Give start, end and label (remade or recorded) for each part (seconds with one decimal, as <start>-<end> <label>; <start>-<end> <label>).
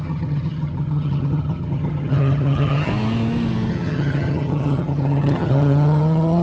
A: 0.0-2.9 remade; 2.9-3.7 recorded; 3.7-6.4 remade